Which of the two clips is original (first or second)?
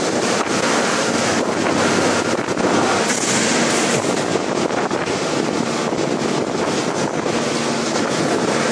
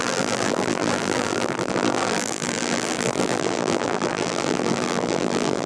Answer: first